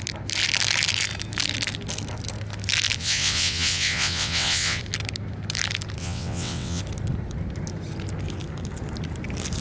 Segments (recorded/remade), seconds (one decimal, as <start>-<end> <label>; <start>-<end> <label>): 0.0-3.0 recorded; 3.0-4.8 remade; 4.8-6.0 recorded; 6.0-6.8 remade; 6.8-9.6 recorded